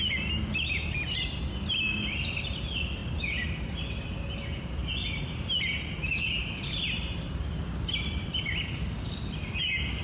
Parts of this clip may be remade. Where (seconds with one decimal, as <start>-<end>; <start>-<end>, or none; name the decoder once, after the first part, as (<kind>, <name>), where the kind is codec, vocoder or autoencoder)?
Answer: none